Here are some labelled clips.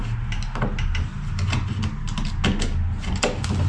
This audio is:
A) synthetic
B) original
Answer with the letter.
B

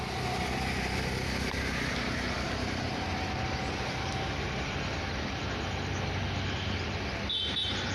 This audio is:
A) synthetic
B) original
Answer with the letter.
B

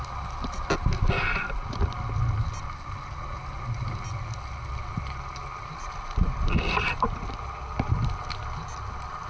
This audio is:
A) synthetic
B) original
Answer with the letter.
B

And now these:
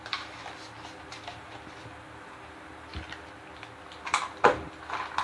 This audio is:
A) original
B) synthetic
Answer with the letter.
A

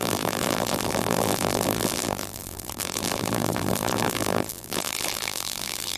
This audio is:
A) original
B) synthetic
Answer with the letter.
B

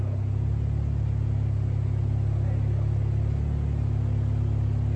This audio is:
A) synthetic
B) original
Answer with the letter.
B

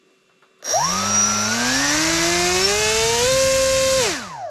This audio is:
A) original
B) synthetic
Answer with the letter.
A